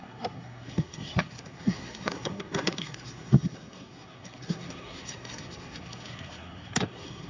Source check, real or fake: fake